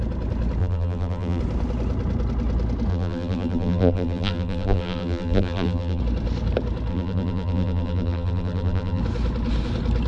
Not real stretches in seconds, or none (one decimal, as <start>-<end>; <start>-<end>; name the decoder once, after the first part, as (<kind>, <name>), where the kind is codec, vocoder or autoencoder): 0.6-1.4 (vocoder, BigVGAN v2); 2.9-6.0; 6.9-9.0